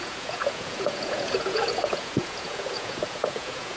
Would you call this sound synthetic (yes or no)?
yes